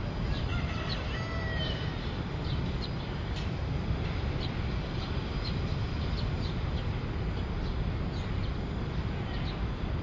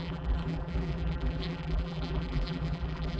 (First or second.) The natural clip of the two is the first